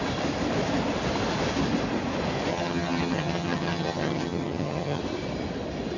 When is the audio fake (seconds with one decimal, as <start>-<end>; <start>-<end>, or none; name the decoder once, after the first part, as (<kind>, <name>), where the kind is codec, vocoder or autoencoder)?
2.5-5.0 (vocoder, HiFi-GAN)